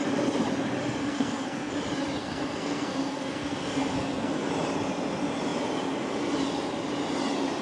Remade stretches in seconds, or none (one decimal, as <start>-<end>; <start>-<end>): 1.0-1.7; 2.2-4.5